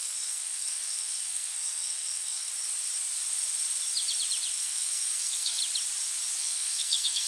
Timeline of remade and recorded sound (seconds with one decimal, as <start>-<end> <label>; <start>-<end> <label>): 0.0-2.5 remade; 2.5-4.5 recorded; 4.5-5.6 remade; 5.6-6.4 recorded; 6.4-7.3 remade